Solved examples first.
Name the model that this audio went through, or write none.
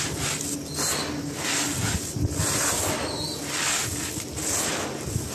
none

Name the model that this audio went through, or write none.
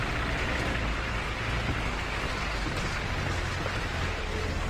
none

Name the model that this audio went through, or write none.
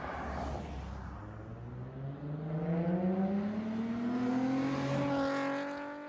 none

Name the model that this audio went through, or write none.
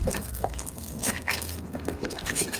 codec, SNAC